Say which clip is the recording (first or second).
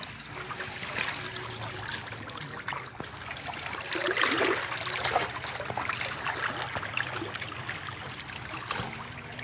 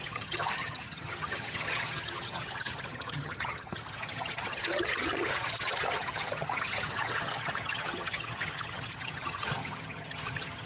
first